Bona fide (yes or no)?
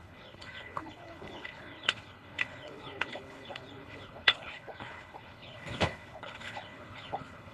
no